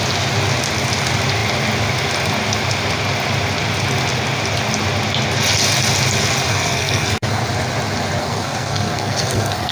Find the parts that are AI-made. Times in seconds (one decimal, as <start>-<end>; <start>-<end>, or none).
6.5-7.4; 8.2-9.7